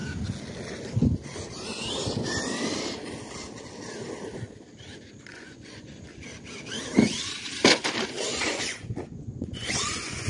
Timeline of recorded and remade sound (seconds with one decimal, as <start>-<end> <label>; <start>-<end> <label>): 0.0-5.3 recorded; 5.3-6.0 remade; 6.0-8.3 recorded; 8.3-10.3 remade